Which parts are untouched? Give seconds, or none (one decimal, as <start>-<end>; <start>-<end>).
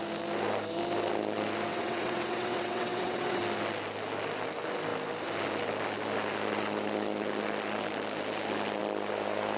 0.0-1.7; 3.4-9.6